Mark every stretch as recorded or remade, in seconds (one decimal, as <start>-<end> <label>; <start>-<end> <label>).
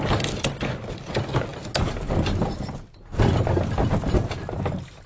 0.0-5.1 recorded